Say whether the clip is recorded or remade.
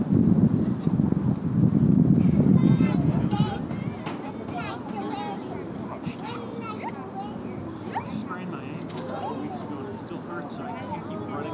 recorded